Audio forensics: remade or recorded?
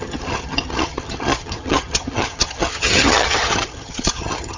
remade